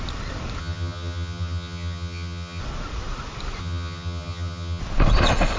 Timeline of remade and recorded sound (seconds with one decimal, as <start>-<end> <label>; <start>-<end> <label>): 0.0-0.6 recorded; 0.6-2.6 remade; 2.6-3.6 recorded; 3.6-4.8 remade; 4.8-5.6 recorded